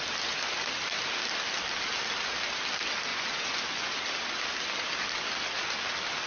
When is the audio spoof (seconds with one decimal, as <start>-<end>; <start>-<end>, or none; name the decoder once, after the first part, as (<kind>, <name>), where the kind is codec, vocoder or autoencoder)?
3.1-3.9 (vocoder, Vocos)